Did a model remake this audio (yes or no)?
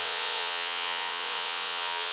yes